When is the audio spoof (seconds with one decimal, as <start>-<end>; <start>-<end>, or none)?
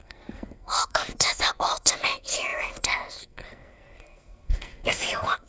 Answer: 0.0-5.5